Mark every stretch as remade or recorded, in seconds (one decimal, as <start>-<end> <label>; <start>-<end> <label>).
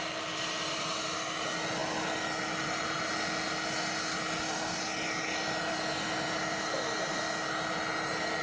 0.0-8.4 recorded